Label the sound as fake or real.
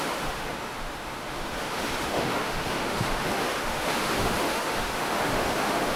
fake